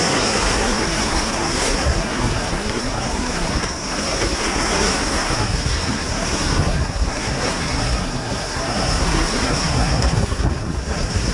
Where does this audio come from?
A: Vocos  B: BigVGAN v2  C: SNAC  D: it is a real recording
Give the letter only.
C